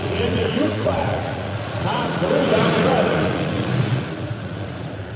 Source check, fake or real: fake